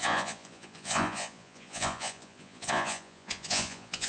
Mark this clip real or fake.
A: fake